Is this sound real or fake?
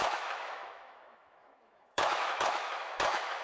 fake